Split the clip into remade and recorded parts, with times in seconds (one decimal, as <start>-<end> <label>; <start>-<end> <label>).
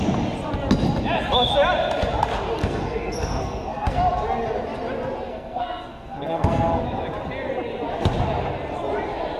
0.0-2.6 recorded; 2.6-4.0 remade; 4.0-5.3 recorded; 5.3-6.8 remade; 6.8-9.4 recorded